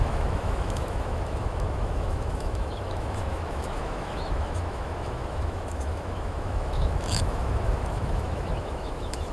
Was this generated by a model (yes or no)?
yes